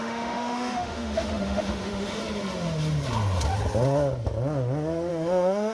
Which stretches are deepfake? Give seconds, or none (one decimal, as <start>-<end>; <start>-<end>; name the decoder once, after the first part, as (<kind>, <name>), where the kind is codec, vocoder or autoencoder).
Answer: 0.0-2.2 (autoencoder, DAC-VAE); 5.1-5.7